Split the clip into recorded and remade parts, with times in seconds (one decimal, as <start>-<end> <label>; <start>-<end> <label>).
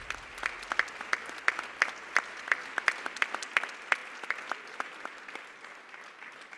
0.0-6.6 recorded